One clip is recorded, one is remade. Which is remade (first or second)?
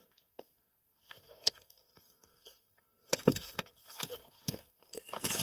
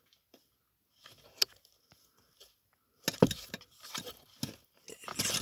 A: first